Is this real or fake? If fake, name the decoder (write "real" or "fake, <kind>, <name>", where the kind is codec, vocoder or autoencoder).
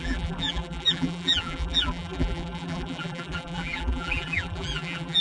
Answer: fake, vocoder, BigVGAN v2